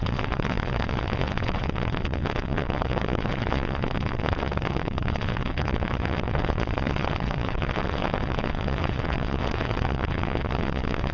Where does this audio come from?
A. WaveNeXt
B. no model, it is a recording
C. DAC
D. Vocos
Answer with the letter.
A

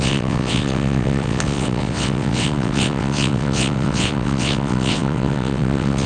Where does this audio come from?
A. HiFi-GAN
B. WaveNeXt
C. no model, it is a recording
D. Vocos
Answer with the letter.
B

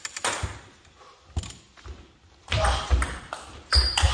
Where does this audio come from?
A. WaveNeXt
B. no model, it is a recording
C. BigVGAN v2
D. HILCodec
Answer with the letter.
B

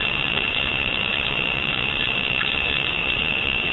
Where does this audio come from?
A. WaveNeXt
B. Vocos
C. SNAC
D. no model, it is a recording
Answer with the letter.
A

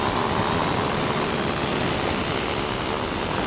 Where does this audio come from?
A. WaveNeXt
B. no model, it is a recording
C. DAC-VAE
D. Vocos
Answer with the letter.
B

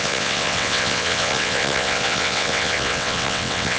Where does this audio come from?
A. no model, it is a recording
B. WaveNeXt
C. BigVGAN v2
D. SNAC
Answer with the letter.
B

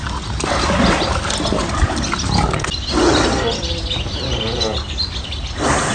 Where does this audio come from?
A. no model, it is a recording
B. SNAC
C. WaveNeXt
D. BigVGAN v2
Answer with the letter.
A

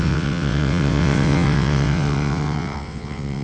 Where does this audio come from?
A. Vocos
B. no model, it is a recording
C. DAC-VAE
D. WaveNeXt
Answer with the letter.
D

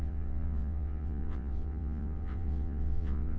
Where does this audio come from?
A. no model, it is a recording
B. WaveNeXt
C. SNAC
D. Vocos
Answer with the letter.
B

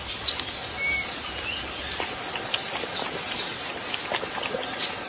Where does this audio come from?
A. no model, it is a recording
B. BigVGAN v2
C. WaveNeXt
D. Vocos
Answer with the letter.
A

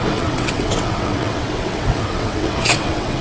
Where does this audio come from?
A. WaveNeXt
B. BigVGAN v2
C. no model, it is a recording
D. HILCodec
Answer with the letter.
A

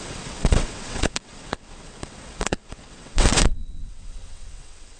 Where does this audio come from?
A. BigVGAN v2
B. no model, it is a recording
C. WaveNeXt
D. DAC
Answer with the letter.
C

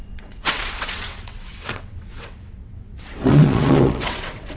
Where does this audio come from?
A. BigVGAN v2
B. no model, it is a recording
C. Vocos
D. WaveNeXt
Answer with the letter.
D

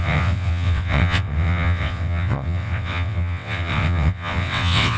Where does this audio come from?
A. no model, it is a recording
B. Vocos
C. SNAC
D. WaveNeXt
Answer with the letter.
D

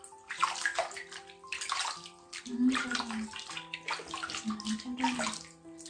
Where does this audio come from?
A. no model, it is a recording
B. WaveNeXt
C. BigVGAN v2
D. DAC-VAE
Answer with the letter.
A